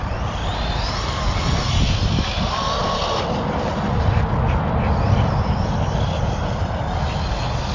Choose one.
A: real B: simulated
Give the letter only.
A